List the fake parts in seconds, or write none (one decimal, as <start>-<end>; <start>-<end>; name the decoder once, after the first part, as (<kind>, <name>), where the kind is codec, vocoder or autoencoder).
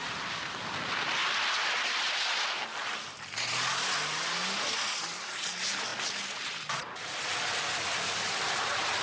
none